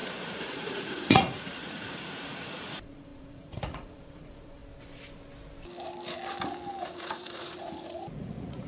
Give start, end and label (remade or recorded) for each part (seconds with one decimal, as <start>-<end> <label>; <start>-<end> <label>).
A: 0.0-4.6 remade; 4.6-6.8 recorded; 6.8-8.7 remade